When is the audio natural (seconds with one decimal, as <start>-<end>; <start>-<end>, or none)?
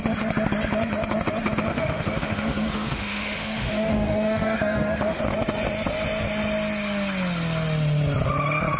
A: 0.0-1.7; 5.2-8.8